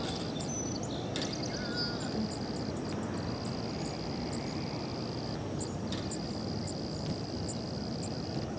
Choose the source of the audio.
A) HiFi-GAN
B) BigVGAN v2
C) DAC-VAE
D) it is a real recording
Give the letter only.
D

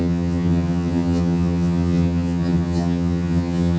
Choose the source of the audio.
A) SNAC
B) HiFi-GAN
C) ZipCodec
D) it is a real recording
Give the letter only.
B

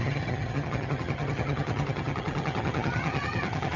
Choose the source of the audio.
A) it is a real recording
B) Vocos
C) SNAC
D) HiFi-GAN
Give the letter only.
D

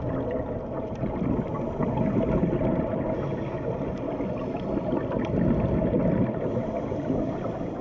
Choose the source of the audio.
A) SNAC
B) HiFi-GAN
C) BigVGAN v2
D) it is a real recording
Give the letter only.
D